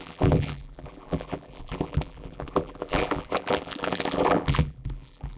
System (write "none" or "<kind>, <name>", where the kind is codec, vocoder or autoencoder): vocoder, BigVGAN v2